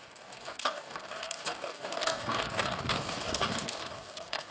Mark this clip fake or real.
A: fake